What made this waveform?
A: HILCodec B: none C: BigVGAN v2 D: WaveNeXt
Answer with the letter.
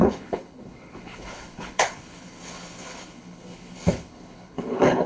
A